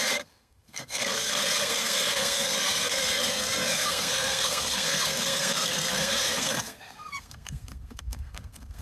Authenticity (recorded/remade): remade